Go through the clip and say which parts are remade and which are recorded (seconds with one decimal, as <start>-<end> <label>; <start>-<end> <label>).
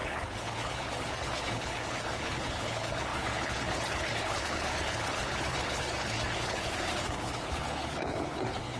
0.0-8.8 remade